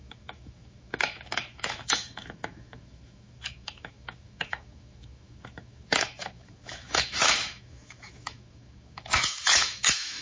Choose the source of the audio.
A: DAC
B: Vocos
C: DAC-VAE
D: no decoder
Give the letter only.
C